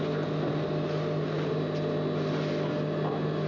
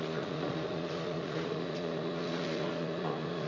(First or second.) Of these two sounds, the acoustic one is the first